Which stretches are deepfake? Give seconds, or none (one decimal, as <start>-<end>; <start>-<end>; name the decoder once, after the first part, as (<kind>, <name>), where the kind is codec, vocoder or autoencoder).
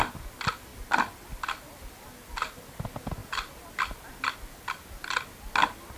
none